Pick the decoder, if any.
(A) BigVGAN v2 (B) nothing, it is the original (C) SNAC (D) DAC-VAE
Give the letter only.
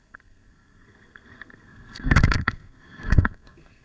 C